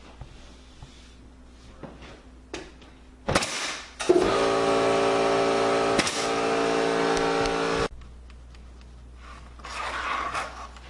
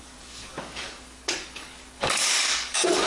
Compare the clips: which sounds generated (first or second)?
second